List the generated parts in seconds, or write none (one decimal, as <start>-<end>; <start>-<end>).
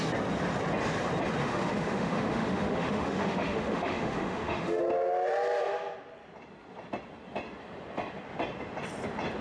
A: 1.4-4.8